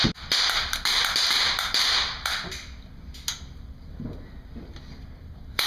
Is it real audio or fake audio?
real